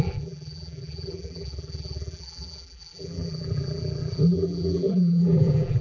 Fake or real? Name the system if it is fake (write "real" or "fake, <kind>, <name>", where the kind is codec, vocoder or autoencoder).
fake, vocoder, BigVGAN v2